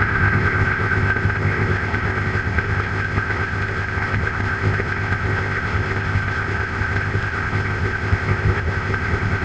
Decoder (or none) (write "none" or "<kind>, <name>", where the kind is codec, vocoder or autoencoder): codec, ZipCodec